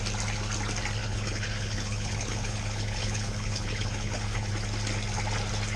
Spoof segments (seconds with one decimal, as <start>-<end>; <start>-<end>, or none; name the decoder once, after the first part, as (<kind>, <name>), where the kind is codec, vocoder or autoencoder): 1.0-4.5 (codec, HILCodec)